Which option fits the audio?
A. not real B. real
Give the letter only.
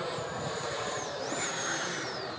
A